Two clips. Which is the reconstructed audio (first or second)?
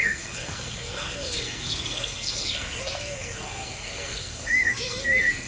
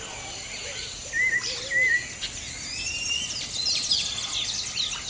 first